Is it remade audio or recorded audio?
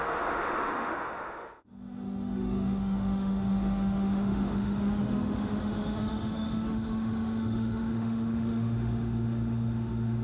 remade